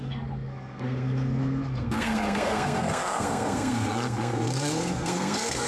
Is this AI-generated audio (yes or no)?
yes